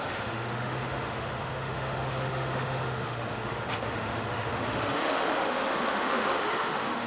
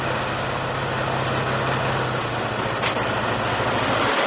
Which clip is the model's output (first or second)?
first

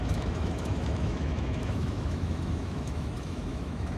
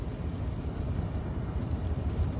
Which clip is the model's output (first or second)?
first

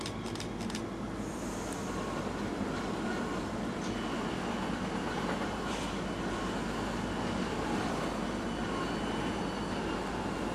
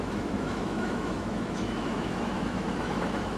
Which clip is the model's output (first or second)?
second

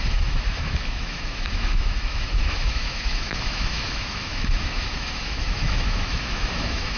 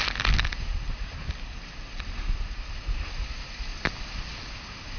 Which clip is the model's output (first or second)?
first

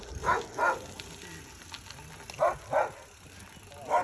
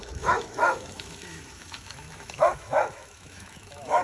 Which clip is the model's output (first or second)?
second